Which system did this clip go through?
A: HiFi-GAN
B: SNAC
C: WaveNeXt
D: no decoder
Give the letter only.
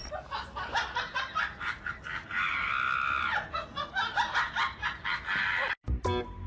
D